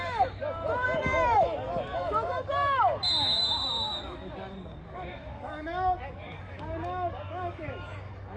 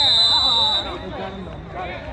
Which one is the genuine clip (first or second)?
second